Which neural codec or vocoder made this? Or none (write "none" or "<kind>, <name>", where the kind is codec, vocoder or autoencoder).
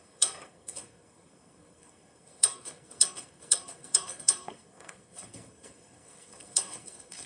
codec, SNAC